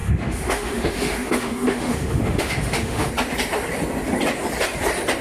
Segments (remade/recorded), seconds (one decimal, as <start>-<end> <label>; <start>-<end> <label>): 0.0-3.1 remade; 3.1-5.2 recorded